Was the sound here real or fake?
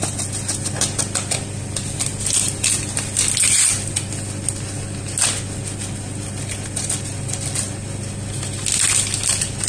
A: real